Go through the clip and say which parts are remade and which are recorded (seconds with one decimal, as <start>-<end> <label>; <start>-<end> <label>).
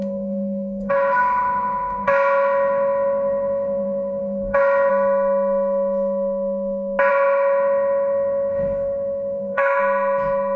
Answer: 0.0-4.9 remade; 4.9-7.1 recorded; 7.1-9.8 remade; 9.8-10.6 recorded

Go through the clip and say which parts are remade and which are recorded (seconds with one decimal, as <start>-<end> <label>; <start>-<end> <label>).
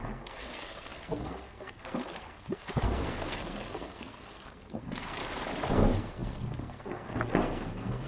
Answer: 0.0-5.2 remade; 5.2-5.7 recorded; 5.7-8.1 remade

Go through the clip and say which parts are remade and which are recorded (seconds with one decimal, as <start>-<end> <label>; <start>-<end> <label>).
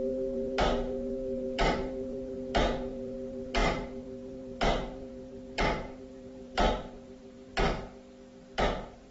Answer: 0.0-7.5 remade; 7.5-8.6 recorded; 8.6-9.1 remade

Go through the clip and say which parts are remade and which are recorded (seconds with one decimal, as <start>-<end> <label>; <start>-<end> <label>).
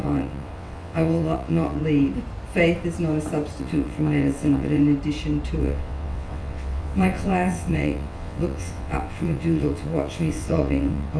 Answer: 0.0-1.8 remade; 1.8-3.6 recorded; 3.6-4.8 remade; 4.8-5.6 recorded; 5.6-11.2 remade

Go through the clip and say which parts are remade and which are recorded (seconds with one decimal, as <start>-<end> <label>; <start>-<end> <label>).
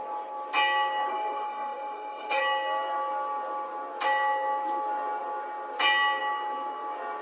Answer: 0.0-1.1 recorded; 1.1-2.4 remade; 2.4-7.2 recorded